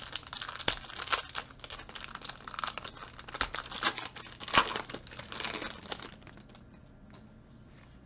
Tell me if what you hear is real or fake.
real